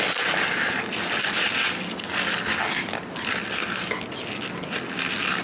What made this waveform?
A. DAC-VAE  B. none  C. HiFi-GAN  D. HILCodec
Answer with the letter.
B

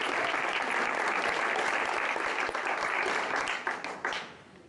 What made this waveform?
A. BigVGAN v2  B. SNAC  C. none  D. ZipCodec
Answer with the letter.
C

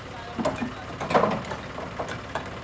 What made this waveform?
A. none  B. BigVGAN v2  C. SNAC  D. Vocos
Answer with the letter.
A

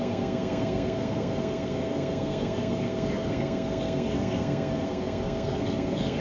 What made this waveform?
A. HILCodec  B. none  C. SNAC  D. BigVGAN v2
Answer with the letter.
C